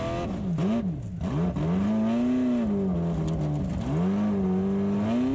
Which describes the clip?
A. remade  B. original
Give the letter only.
B